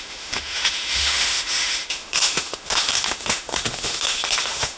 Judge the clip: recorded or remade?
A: remade